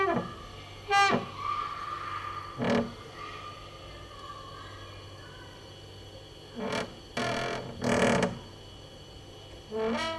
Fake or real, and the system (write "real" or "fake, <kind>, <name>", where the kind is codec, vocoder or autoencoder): real